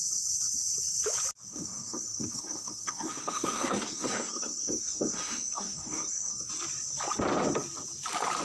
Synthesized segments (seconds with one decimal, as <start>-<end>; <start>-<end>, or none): 1.5-6.5